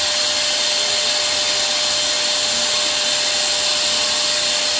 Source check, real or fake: real